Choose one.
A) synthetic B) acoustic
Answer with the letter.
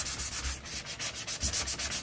B